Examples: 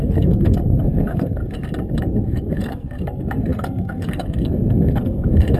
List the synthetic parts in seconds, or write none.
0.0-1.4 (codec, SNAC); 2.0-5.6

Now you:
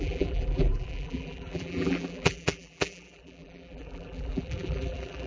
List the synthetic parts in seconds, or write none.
0.0-5.3 (vocoder, BigVGAN v2)

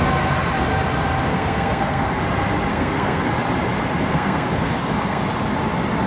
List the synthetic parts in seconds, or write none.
1.3-2.2 (codec, SNAC); 2.7-3.3; 4.1-5.2

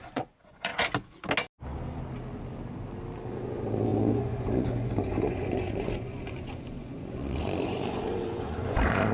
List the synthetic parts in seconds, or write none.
0.0-0.7 (vocoder, Vocos); 3.3-9.1

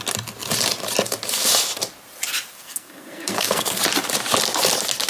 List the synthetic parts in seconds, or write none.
2.5-3.8 (codec, SNAC)

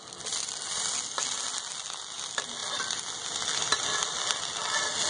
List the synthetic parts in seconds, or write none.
none